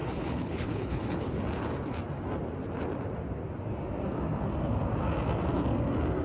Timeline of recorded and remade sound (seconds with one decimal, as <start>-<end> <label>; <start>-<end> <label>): 0.0-1.3 remade; 1.3-6.2 recorded